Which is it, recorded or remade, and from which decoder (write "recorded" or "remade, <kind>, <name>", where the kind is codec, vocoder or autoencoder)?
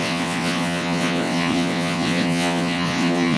remade, vocoder, WaveNeXt